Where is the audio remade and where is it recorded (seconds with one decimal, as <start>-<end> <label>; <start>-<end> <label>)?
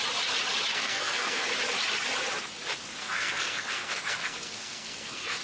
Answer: 0.0-0.7 recorded; 0.7-1.5 remade; 1.5-3.0 recorded; 3.0-5.4 remade